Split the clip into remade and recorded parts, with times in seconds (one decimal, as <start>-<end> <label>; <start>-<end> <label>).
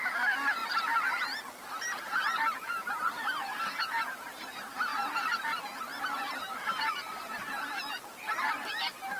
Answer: 0.0-4.9 remade; 4.9-7.6 recorded; 7.6-9.2 remade